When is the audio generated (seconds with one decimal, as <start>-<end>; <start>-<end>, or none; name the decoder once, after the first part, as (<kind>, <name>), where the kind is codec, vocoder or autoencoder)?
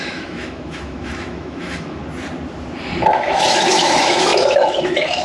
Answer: 0.0-2.0 (autoencoder, DAC-VAE); 3.1-5.2